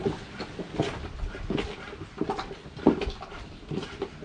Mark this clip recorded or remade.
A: recorded